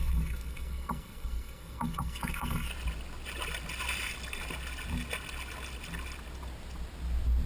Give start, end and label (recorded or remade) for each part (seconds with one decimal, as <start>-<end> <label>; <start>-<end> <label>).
0.0-2.7 remade; 2.7-7.5 recorded